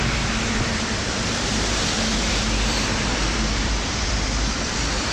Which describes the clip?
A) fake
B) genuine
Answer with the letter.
A